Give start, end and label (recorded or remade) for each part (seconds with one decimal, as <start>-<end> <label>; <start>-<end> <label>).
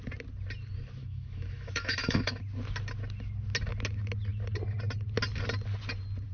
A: 0.0-1.0 recorded; 1.0-2.4 remade; 2.4-6.3 recorded